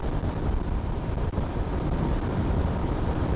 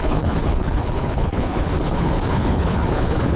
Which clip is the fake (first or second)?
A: second